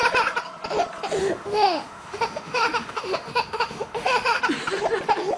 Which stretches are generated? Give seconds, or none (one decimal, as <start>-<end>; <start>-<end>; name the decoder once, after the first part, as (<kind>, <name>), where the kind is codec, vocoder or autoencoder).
1.2-4.4 (autoencoder, DAC-VAE)